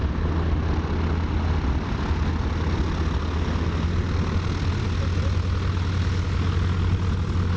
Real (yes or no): yes